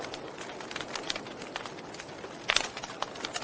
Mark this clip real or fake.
real